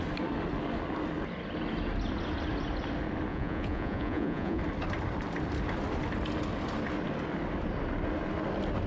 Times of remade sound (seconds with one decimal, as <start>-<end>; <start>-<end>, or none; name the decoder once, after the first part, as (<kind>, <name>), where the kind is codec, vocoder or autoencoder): 3.3-4.6 (vocoder, Vocos)